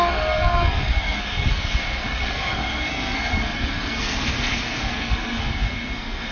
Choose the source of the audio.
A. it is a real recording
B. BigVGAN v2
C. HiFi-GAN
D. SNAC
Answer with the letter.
D